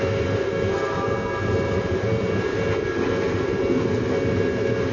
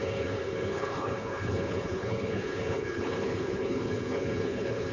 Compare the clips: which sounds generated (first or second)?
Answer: second